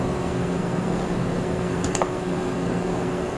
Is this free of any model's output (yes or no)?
no